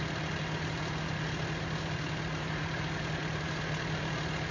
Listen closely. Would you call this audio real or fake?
real